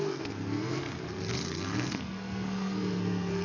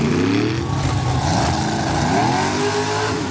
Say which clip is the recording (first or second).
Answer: second